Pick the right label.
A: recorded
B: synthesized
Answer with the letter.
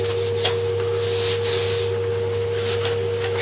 A